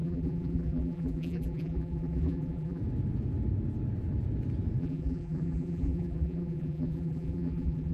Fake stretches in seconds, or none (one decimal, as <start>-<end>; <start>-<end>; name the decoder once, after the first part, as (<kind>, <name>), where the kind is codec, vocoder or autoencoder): 0.0-2.8 (vocoder, BigVGAN v2); 4.8-7.9